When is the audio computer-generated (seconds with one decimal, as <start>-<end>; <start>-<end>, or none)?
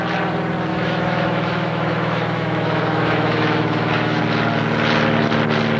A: 0.7-4.2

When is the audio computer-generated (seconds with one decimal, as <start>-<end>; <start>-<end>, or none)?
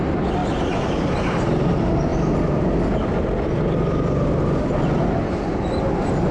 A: none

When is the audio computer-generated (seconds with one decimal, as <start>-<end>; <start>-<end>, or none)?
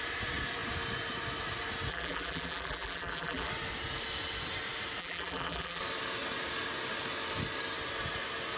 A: 1.9-3.5; 5.0-5.8